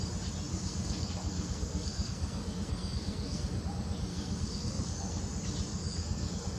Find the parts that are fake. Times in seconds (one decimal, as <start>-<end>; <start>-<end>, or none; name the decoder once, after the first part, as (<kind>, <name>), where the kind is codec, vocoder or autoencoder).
0.5-3.6 (codec, SNAC); 4.1-5.2; 5.7-6.6